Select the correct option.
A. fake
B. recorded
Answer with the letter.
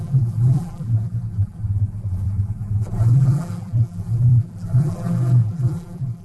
A